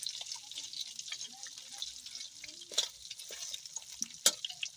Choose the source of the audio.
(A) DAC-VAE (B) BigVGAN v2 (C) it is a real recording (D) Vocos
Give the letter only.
C